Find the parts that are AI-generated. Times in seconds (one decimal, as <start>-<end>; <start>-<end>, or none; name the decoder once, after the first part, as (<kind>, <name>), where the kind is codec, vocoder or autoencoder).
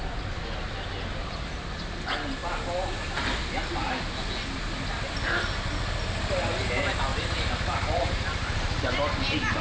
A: 7.1-8.8 (vocoder, BigVGAN v2)